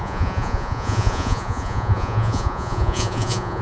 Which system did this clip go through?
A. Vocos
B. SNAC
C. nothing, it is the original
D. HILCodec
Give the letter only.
A